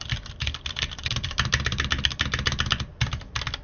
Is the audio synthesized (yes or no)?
yes